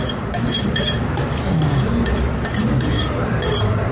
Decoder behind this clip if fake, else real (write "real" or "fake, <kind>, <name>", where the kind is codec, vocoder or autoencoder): fake, vocoder, BigVGAN v2